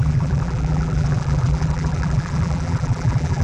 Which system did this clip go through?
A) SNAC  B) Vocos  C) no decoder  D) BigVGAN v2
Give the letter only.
D